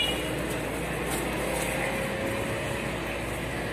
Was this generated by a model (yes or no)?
no